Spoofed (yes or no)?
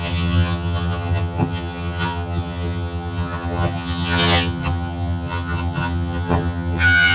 yes